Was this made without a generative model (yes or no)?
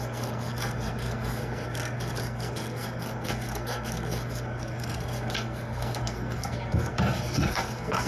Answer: no